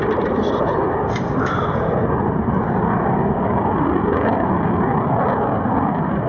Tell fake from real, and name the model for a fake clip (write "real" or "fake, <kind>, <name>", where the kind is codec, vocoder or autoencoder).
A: real